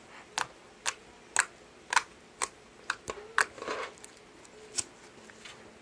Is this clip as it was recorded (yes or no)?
yes